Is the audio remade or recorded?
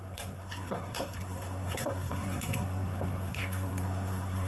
remade